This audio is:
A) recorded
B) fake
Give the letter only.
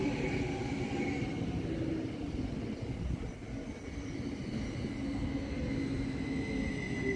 A